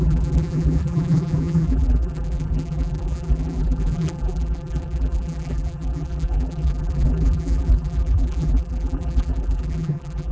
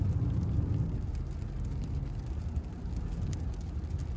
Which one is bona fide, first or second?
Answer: second